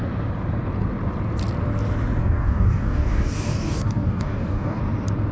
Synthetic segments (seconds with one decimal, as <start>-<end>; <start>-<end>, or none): 2.2-4.8